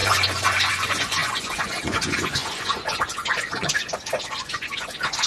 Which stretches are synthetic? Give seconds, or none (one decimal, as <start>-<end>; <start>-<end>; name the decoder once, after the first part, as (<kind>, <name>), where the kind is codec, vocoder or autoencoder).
0.0-5.3 (vocoder, Vocos)